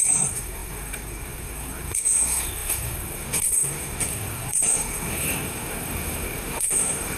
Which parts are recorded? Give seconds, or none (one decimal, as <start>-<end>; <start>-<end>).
none